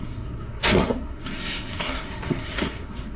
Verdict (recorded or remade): remade